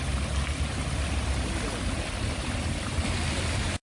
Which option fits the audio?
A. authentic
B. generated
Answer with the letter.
A